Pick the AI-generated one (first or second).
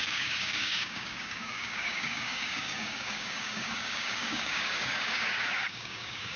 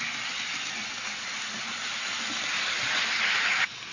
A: first